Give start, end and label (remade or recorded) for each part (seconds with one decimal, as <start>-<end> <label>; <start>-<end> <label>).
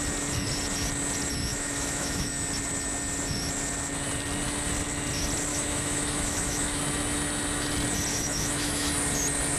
0.0-1.5 recorded; 1.5-2.3 remade; 2.3-5.5 recorded; 5.5-6.8 remade; 6.8-8.1 recorded; 8.1-8.9 remade; 8.9-9.6 recorded